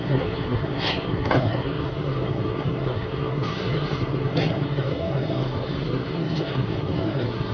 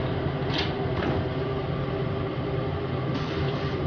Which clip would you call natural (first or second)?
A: second